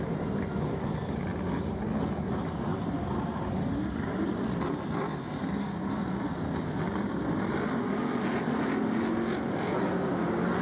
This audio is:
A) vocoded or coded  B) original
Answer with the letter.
B